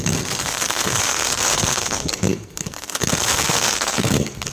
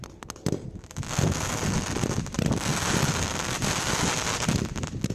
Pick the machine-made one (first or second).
first